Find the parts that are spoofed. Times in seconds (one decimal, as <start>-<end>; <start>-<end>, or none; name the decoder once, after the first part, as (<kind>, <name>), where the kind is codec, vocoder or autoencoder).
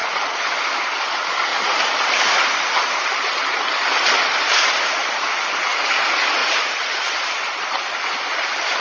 0.0-0.7 (vocoder, BigVGAN v2); 6.4-7.6